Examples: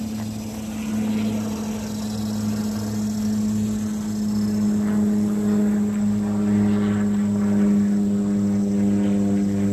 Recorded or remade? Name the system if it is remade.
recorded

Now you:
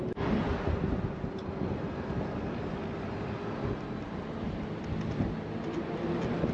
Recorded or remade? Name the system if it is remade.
recorded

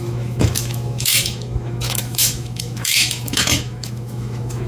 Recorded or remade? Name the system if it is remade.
remade, autoencoder, DAC-VAE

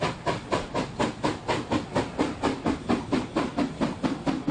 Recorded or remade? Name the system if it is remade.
recorded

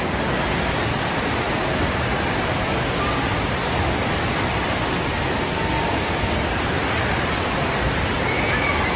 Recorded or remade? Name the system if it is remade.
recorded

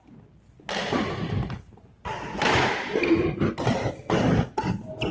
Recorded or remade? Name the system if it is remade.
recorded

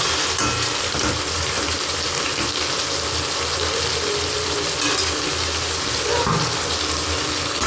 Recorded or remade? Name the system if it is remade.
recorded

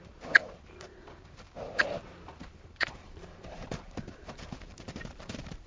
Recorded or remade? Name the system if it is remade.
remade, vocoder, BigVGAN v2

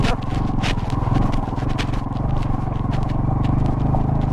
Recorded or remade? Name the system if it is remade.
recorded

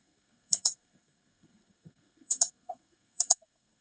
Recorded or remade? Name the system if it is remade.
remade, codec, SNAC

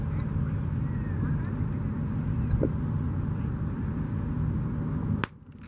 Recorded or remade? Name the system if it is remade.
recorded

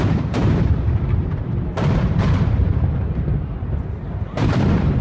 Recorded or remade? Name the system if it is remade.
remade, vocoder, BigVGAN v2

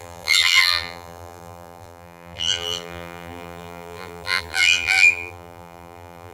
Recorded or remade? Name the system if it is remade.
remade, vocoder, BigVGAN v2